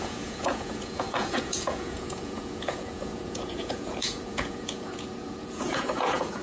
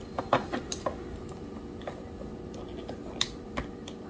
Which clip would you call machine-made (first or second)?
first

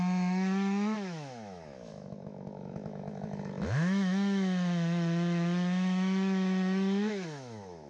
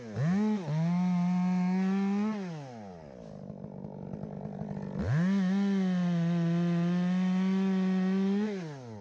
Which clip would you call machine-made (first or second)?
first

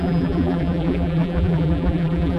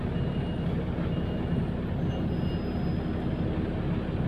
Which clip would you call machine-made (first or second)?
first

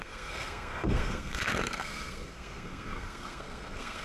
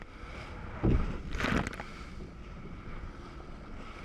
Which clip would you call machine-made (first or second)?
first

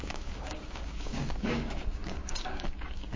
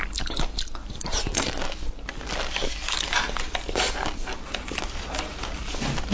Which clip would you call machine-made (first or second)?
first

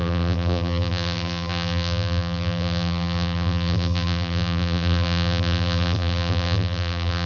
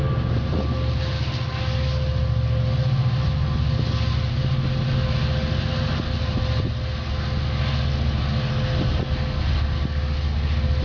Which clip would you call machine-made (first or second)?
first